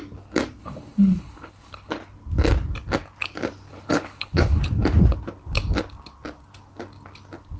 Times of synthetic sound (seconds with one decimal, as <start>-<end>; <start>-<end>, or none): 0.6-1.9; 3.7-4.6